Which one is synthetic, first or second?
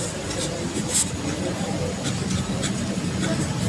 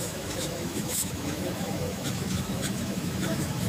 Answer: second